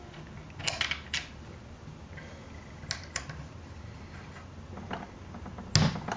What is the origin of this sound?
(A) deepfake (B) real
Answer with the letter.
B